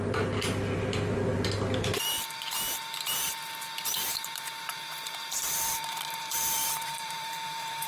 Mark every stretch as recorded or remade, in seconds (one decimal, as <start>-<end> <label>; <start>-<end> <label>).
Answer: 0.0-4.1 recorded; 4.1-7.9 remade